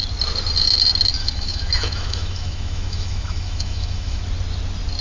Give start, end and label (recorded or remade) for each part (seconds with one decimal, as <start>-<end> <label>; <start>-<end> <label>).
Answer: 0.0-1.2 recorded; 1.2-4.2 remade; 4.2-5.0 recorded